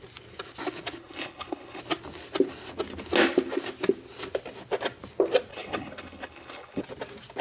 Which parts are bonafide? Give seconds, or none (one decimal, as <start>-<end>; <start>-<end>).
0.0-1.0; 1.8-5.5; 6.8-7.4